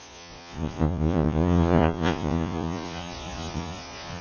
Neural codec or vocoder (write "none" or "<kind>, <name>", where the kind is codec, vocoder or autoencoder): vocoder, Vocos